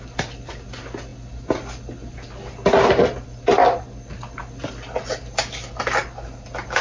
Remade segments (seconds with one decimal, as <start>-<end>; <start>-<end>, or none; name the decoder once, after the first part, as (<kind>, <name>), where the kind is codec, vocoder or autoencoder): none